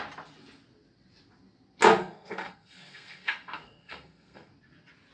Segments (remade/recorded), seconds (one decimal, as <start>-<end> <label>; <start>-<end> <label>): 0.0-2.0 recorded; 2.0-4.5 remade; 4.5-5.1 recorded